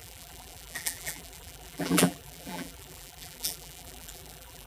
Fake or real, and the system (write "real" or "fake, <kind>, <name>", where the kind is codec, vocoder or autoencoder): fake, vocoder, BigVGAN v2